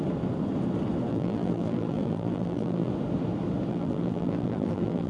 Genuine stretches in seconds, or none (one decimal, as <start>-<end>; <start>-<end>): 0.0-1.1; 2.9-3.7